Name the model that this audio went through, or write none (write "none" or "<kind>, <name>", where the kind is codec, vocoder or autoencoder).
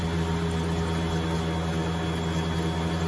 none